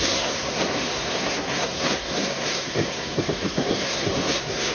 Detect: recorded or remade remade